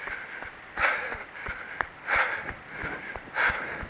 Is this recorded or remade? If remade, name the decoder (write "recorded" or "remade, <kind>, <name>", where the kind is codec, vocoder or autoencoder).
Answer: recorded